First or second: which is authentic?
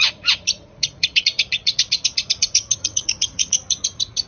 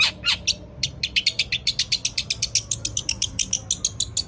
second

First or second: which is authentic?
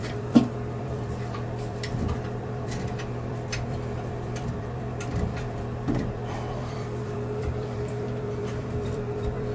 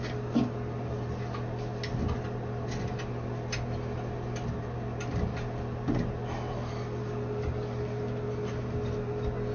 second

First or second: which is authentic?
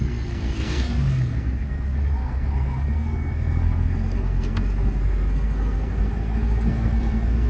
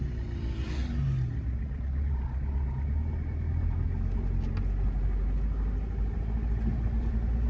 second